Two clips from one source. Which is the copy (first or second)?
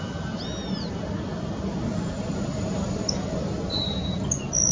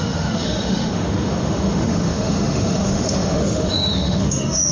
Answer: second